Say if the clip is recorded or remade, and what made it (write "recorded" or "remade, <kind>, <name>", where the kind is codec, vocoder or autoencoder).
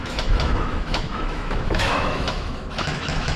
remade, autoencoder, DAC-VAE